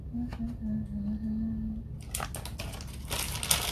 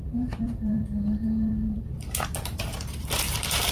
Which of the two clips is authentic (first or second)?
first